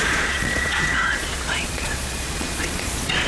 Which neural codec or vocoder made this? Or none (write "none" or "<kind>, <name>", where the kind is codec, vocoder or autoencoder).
vocoder, Vocos